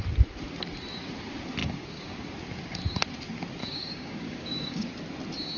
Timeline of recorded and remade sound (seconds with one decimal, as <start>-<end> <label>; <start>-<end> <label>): 0.0-1.6 recorded; 1.6-2.3 remade; 2.3-3.6 recorded; 3.6-4.9 remade; 4.9-5.6 recorded